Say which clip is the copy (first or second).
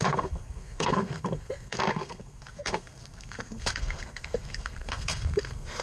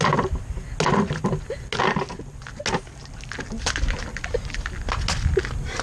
first